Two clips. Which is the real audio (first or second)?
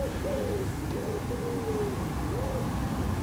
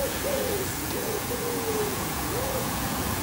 first